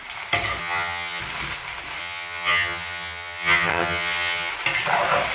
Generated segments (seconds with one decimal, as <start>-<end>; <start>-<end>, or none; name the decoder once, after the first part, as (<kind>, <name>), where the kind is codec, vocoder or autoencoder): 0.6-1.2 (vocoder, HiFi-GAN); 2.0-4.5